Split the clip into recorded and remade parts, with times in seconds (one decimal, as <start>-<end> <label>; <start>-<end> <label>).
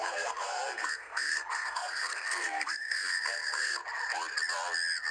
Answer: 0.0-3.8 remade; 3.8-5.1 recorded